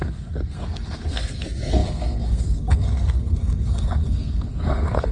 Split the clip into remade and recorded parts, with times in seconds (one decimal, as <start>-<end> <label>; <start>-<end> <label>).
0.0-5.1 remade